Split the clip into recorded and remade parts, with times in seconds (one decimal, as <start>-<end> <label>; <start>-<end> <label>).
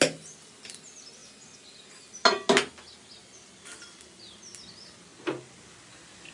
0.0-6.3 recorded